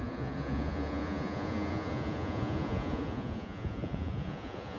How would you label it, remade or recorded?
remade